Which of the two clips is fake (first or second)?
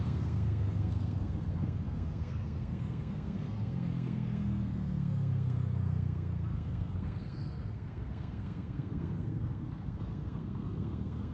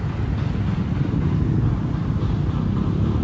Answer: first